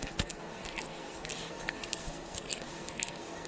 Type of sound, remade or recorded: remade